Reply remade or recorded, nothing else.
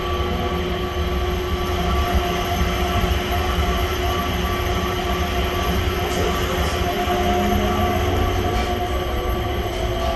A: recorded